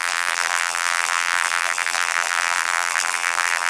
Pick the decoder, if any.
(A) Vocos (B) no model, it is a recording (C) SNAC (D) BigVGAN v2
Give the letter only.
D